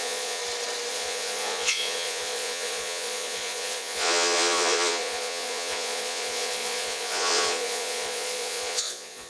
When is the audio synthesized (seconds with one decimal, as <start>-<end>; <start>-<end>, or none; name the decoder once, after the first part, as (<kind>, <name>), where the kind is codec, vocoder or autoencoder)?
0.0-0.4 (vocoder, Vocos); 0.9-9.3

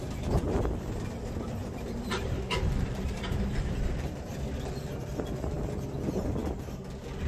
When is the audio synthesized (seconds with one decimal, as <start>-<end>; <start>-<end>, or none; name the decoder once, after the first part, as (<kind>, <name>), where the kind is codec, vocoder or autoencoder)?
1.6-4.3 (vocoder, BigVGAN v2)

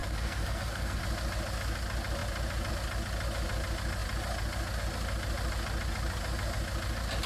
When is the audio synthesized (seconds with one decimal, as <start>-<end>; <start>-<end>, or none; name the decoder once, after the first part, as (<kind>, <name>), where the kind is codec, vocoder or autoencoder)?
0.0-1.0 (codec, SNAC)

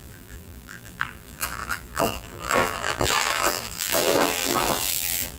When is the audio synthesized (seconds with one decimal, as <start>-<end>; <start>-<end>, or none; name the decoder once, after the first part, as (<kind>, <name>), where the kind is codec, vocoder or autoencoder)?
0.0-5.4 (vocoder, BigVGAN v2)

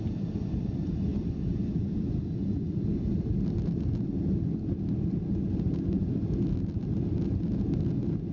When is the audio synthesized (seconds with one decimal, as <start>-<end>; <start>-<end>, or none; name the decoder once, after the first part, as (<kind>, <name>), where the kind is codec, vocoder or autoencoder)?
none

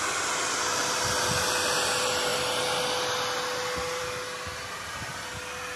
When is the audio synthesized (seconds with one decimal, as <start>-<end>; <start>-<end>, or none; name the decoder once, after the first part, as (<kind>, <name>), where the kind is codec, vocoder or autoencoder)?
none